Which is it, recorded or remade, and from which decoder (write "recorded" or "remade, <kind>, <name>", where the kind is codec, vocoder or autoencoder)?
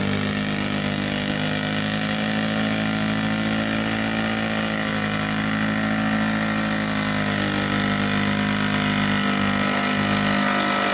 recorded